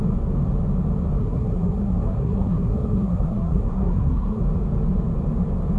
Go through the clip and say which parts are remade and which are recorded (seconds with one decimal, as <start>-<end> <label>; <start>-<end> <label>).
0.0-1.2 recorded; 1.2-4.4 remade; 4.4-5.8 recorded